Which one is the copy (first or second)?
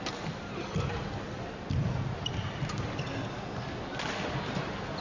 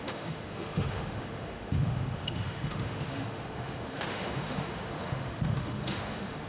second